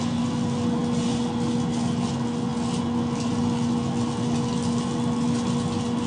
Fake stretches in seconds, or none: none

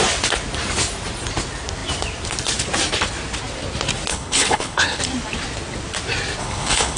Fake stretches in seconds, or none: 4.1-5.0 (codec, HILCodec); 6.4-7.0

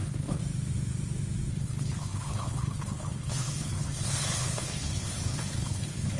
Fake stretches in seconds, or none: 0.0-0.4 (codec, HILCodec); 1.5-6.2

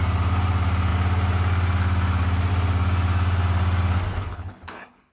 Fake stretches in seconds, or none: 4.1-5.1 (codec, HILCodec)

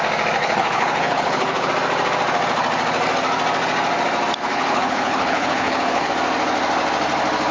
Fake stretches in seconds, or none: 0.4-1.7 (codec, HILCodec); 4.5-6.1

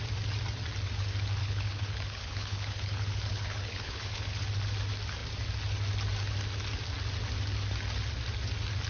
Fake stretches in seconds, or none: 1.4-4.4 (codec, HILCodec)